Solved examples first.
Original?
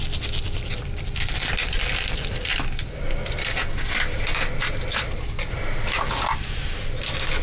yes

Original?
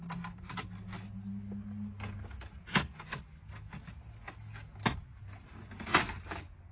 yes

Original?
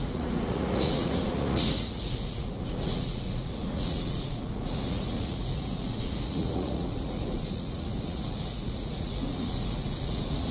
no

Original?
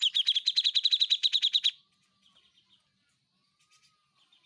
yes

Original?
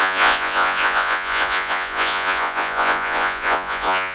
no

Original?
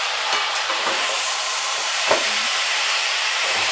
no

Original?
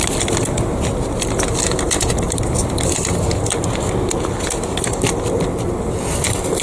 yes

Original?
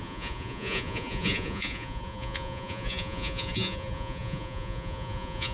no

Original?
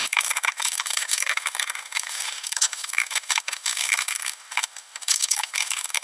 no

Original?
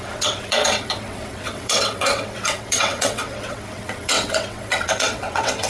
no